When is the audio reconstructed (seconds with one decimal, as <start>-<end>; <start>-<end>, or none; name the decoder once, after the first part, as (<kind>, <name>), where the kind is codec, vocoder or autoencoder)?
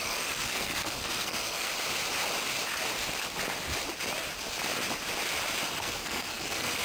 0.0-1.7 (codec, SNAC); 5.8-6.8